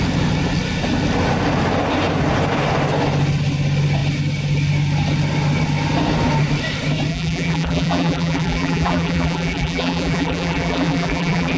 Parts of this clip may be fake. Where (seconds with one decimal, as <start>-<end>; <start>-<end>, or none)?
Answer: 7.1-11.6